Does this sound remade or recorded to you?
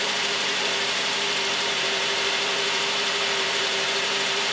remade